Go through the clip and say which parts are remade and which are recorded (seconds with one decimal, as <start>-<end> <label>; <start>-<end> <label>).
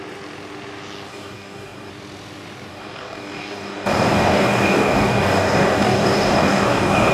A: 0.0-1.1 recorded; 1.1-1.9 remade; 1.9-2.7 recorded; 2.7-7.1 remade